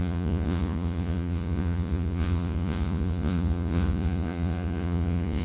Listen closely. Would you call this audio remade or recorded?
remade